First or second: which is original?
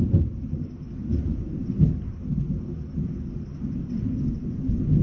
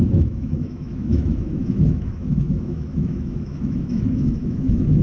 first